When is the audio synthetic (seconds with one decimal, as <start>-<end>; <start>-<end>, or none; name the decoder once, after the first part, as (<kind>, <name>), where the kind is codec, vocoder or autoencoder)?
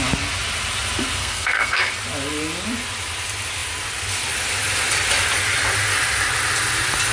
1.2-1.9 (codec, SNAC)